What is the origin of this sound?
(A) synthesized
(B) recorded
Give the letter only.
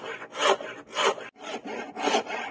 B